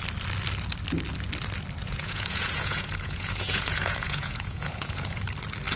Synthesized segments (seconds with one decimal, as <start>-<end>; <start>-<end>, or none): 1.8-5.2